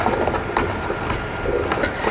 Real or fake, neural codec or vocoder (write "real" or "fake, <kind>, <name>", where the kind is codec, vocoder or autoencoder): real